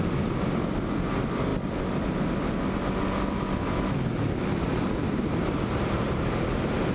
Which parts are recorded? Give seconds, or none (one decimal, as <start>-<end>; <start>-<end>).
0.0-4.7; 6.2-6.9